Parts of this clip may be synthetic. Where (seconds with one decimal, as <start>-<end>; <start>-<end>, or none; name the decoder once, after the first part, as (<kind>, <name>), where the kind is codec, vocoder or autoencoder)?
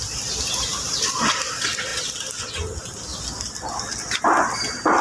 0.7-1.3 (vocoder, BigVGAN v2)